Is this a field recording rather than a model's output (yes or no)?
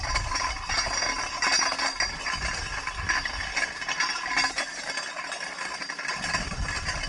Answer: yes